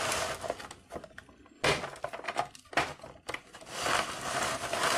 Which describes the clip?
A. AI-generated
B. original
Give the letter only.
B